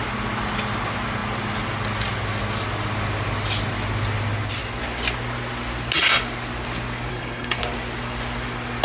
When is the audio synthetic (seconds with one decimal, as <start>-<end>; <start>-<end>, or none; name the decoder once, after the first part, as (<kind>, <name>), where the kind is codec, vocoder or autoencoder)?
7.1-7.6 (codec, SNAC)